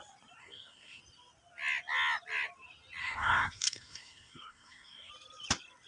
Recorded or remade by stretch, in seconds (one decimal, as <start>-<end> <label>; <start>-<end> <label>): 0.0-0.4 recorded; 0.4-1.0 remade; 1.0-3.0 recorded; 3.0-5.1 remade; 5.1-5.9 recorded